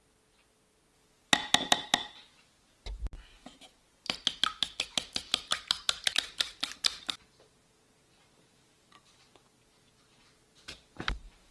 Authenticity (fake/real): real